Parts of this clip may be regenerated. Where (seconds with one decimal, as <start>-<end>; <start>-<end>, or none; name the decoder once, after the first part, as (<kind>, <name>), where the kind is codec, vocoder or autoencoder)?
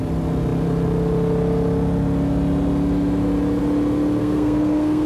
4.2-5.1 (codec, SNAC)